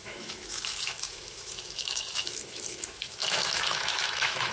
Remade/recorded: remade